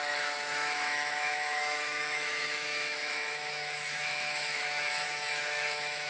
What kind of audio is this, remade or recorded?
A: remade